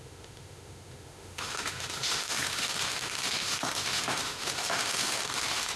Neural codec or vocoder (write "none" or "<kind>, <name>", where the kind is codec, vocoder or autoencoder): autoencoder, DAC-VAE